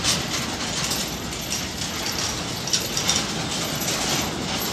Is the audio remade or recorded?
recorded